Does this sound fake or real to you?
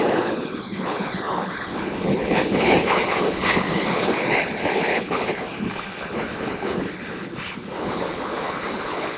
fake